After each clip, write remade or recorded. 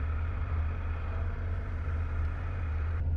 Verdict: remade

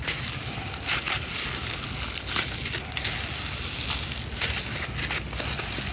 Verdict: recorded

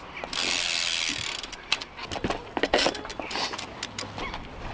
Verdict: recorded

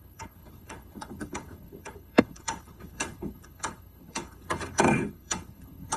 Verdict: remade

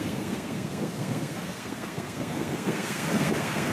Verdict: remade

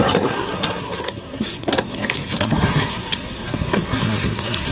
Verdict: remade